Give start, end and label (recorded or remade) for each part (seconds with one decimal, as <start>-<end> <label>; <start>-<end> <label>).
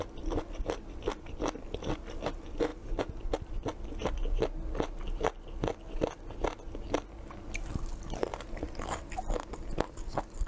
0.0-10.5 recorded